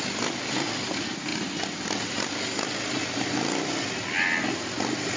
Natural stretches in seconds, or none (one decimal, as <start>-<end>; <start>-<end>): 0.0-5.2